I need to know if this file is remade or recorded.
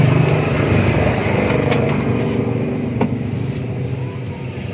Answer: recorded